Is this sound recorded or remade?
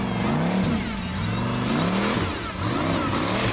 recorded